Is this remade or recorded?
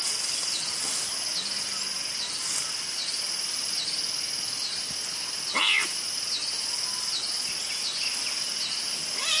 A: recorded